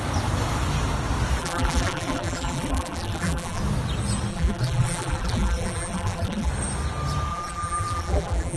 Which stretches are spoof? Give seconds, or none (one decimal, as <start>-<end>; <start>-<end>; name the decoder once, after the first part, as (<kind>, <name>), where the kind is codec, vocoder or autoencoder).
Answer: 1.4-3.6 (vocoder, BigVGAN v2); 4.3-6.5; 7.3-8.6